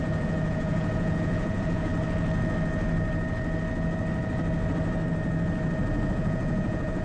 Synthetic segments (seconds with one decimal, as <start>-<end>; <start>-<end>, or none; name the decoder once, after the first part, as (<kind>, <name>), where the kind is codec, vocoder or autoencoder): 0.0-1.9 (vocoder, Vocos); 6.1-7.0